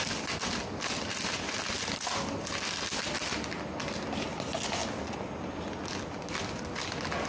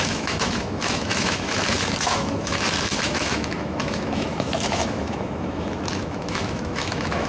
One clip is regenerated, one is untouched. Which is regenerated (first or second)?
second